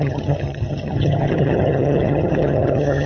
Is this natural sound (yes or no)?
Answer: no